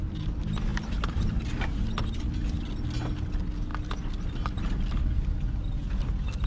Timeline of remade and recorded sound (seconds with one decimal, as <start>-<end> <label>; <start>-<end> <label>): 0.0-6.5 recorded